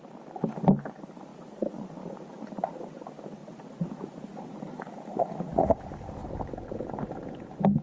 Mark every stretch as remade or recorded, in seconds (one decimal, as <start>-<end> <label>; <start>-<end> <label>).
0.0-1.3 recorded; 1.3-2.6 remade; 2.6-3.4 recorded; 3.4-5.8 remade; 5.8-7.8 recorded